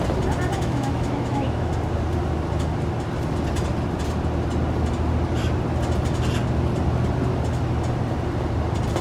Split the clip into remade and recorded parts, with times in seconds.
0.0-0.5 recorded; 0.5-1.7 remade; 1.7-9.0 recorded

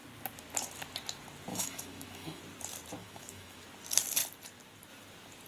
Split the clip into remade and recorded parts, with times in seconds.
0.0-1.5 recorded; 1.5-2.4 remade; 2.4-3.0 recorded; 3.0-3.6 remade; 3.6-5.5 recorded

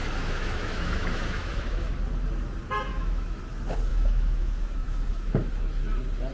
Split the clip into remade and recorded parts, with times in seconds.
0.0-1.9 remade; 1.9-2.9 recorded; 2.9-3.4 remade; 3.4-3.9 recorded; 3.9-5.5 remade; 5.5-6.3 recorded

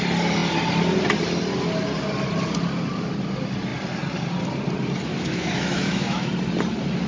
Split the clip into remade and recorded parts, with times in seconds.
0.0-5.1 recorded; 5.1-6.3 remade; 6.3-7.1 recorded